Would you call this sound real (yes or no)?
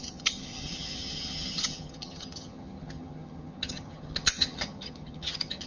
no